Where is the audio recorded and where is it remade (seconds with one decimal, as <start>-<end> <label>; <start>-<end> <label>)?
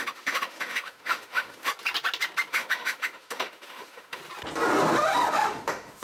0.0-1.7 remade; 1.7-2.5 recorded; 2.5-4.2 remade; 4.2-5.3 recorded; 5.3-6.0 remade